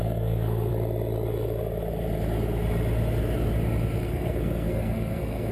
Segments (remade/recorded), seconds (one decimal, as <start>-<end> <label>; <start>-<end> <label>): 0.0-0.7 remade; 0.7-4.0 recorded; 4.0-5.5 remade